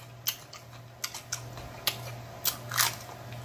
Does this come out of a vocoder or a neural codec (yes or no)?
no